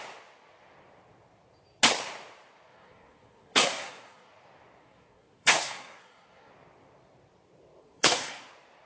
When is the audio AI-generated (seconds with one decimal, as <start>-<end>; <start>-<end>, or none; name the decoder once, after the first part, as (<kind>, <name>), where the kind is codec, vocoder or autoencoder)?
2.7-4.3 (codec, SNAC); 4.8-6.5; 7.8-8.5